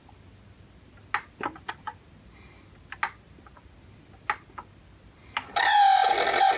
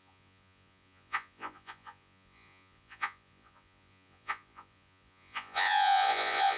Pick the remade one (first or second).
second